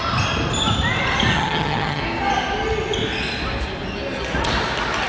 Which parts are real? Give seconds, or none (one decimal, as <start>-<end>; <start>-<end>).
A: 0.0-1.3; 2.0-5.1